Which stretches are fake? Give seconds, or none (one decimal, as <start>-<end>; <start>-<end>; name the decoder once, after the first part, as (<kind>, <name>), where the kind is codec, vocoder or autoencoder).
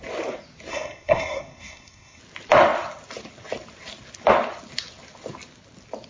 0.7-2.2 (codec, SNAC)